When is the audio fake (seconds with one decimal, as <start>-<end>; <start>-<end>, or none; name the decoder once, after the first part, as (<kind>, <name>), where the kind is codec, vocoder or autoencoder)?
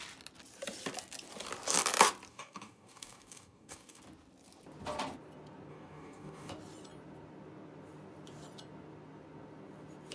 2.3-4.0 (codec, DAC); 5.7-6.5